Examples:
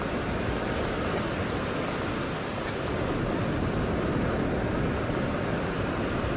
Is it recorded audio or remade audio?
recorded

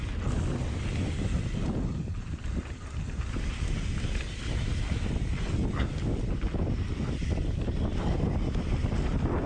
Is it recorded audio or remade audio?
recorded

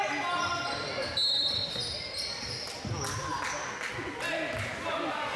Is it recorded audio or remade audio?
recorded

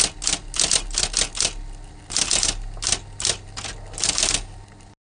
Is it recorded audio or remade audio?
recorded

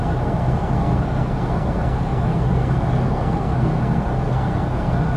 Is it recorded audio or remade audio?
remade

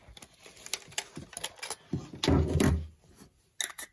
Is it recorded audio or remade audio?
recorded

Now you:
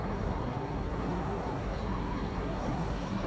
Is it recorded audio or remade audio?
remade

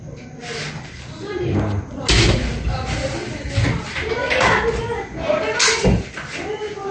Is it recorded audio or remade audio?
recorded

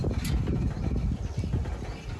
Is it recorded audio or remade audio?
recorded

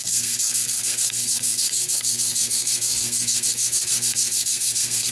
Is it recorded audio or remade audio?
remade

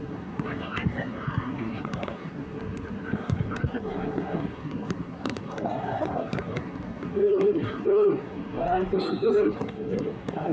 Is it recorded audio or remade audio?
remade